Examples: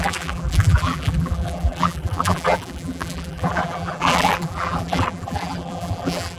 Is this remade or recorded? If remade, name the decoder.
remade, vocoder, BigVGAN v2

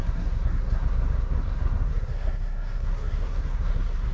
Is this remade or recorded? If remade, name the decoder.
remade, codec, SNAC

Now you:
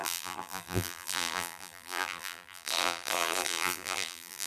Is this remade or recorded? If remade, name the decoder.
remade, vocoder, BigVGAN v2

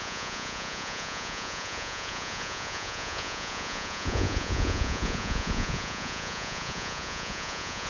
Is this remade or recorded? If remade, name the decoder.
remade, vocoder, Vocos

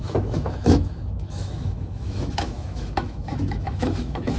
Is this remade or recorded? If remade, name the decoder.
remade, autoencoder, DAC-VAE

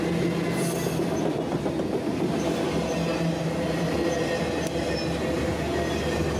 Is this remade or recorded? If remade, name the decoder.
recorded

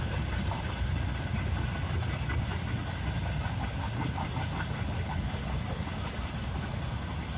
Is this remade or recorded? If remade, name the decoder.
recorded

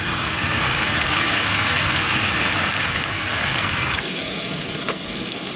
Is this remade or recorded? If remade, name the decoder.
remade, codec, SNAC